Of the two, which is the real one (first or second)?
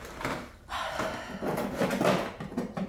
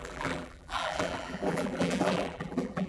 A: first